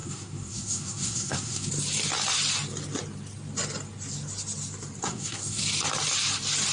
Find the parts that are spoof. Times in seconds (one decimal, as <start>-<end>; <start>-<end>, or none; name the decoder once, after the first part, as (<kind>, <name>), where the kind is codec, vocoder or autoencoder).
0.0-1.7 (codec, SNAC); 5.0-5.6